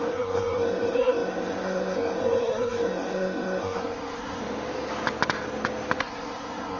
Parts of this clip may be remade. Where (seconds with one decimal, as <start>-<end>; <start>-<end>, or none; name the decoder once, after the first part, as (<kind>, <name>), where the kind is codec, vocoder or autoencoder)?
0.0-4.4 (codec, SNAC); 6.0-6.8